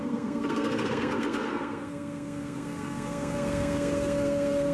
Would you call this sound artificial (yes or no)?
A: yes